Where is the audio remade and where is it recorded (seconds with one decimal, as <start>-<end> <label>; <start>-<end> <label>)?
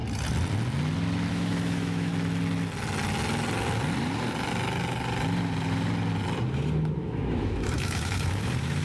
0.0-1.3 recorded; 1.3-2.1 remade; 2.1-7.0 recorded; 7.0-8.8 remade